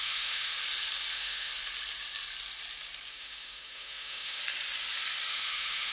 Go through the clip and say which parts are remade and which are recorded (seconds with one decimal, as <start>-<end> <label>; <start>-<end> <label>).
0.0-0.5 remade; 0.5-1.1 recorded; 1.1-1.5 remade; 1.5-3.1 recorded; 3.1-4.4 remade; 4.4-5.3 recorded; 5.3-5.9 remade